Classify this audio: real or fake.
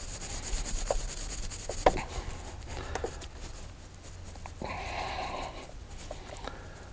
real